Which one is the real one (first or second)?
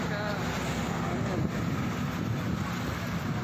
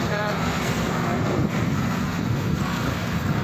first